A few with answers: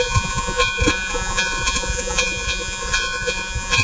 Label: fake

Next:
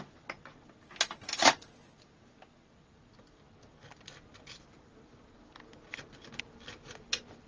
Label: real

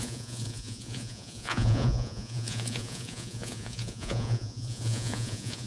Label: fake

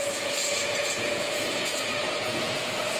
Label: fake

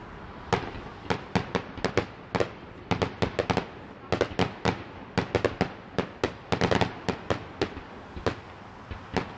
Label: real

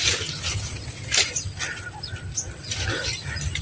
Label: real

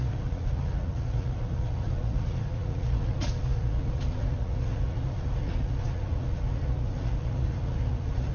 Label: fake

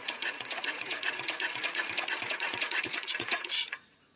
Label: fake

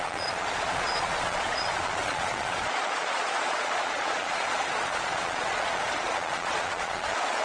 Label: fake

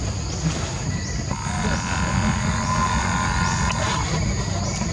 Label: real